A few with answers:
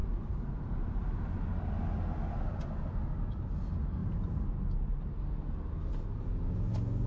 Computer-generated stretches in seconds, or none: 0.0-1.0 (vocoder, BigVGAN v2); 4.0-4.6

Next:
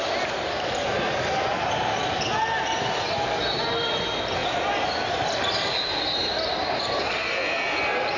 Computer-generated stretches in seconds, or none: none

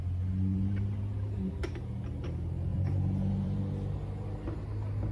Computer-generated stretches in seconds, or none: 0.5-1.9 (vocoder, BigVGAN v2); 2.7-3.6

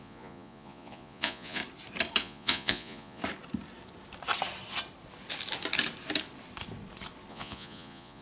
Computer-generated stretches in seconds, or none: 0.0-1.6 (vocoder, Vocos); 2.2-3.2; 7.3-8.2

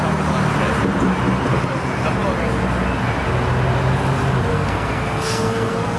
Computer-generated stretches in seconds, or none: 4.5-6.0 (codec, SNAC)

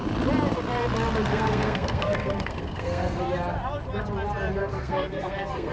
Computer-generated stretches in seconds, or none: 1.3-3.2 (codec, SNAC); 4.6-5.7

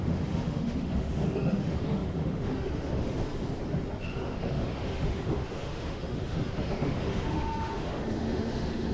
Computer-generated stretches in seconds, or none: 0.0-3.3 (autoencoder, DAC-VAE); 4.0-8.9